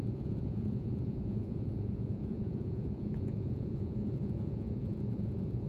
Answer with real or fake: fake